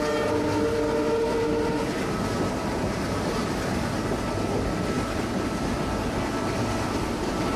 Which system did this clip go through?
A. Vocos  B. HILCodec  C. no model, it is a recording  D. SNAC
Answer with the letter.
C